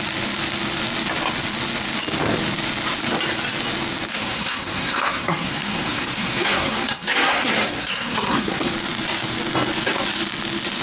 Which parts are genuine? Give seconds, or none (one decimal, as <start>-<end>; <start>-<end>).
0.0-4.1; 8.7-10.8